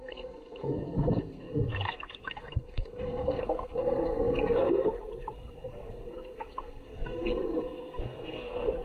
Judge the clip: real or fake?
fake